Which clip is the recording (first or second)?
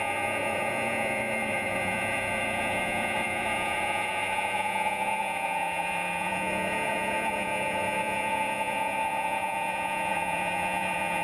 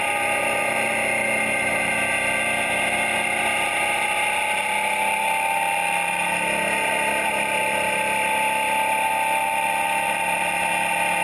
second